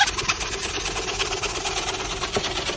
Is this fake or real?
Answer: real